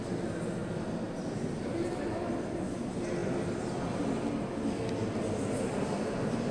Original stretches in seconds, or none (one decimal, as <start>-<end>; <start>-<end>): 0.0-6.5